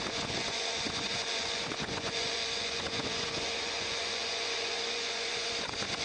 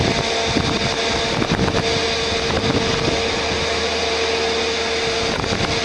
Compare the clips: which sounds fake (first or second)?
first